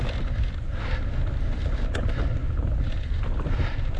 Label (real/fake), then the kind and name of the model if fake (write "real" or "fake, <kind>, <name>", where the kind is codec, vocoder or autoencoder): real